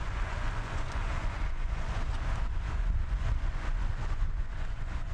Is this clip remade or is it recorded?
remade